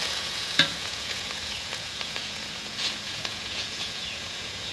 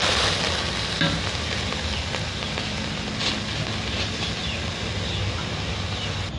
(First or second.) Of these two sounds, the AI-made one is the first